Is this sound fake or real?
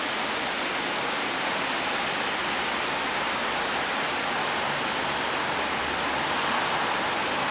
real